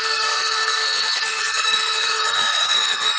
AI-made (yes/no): yes